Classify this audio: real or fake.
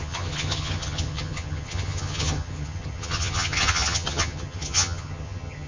fake